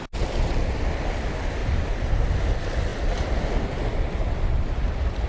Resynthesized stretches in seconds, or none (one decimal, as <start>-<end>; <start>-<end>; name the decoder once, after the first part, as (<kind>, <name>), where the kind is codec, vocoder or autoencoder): none

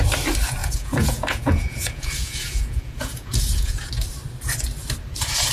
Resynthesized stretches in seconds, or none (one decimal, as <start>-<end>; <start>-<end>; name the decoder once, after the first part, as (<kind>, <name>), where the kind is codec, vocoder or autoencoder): 0.6-3.9 (vocoder, Vocos)